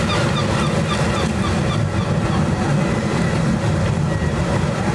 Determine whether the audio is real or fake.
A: real